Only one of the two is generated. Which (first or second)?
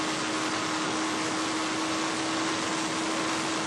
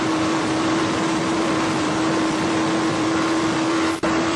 second